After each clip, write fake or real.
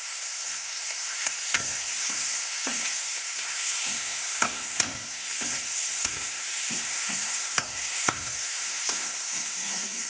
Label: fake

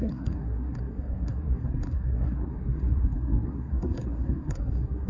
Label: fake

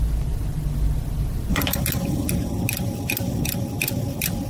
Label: real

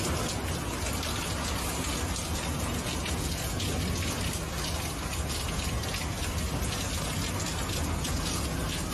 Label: real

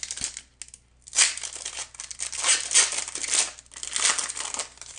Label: real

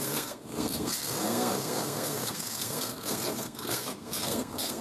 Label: fake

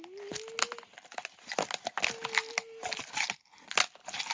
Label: real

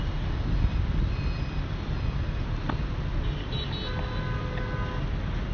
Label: real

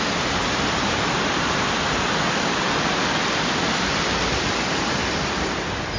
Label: real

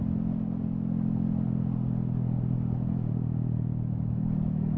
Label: real